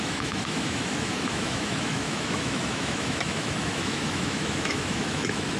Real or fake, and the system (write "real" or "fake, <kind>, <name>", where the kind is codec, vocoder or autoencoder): fake, autoencoder, DAC-VAE